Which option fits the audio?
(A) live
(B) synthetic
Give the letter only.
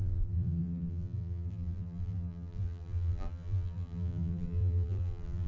B